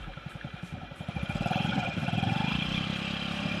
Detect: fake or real fake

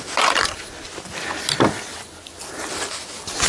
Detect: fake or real real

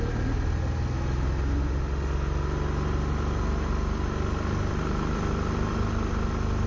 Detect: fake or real real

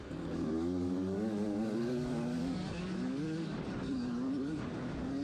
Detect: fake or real fake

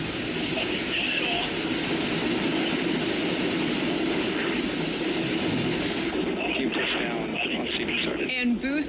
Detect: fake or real real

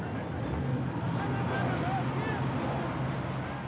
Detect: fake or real real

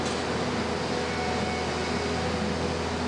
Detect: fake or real real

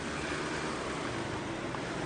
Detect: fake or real real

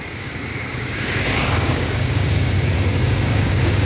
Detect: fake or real fake